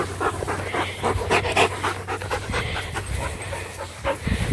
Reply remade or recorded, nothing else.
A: recorded